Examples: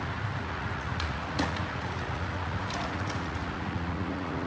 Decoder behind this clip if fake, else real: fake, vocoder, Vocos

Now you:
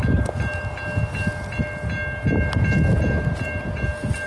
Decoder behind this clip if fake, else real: real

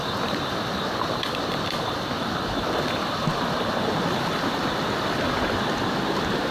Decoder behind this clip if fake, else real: real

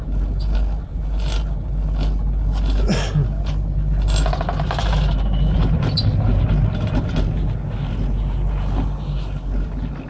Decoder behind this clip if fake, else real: real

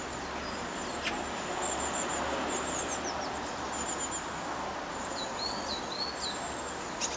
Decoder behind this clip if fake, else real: real